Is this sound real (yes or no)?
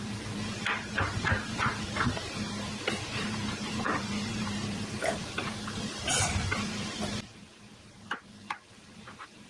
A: no